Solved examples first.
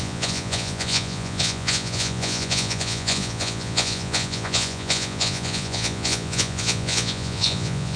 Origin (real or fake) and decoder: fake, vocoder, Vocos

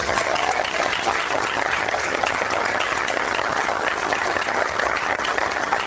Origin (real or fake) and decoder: fake, vocoder, HiFi-GAN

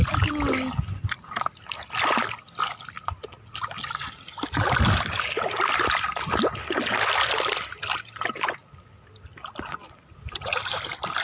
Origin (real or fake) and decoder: real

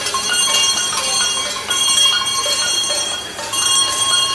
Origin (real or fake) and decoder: fake, vocoder, BigVGAN v2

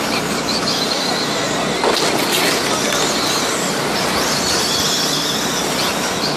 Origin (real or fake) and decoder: real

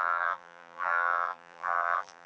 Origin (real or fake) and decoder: fake, vocoder, BigVGAN v2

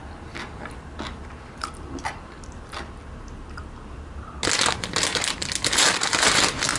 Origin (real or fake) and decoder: real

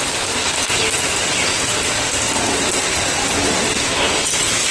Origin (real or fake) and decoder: real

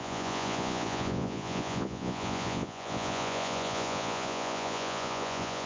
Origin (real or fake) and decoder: fake, vocoder, Vocos